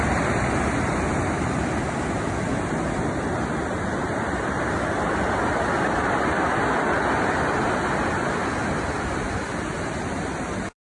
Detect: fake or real real